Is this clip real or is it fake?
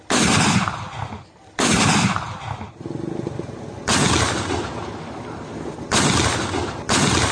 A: real